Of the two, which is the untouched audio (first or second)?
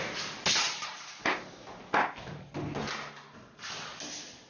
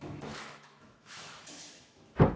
first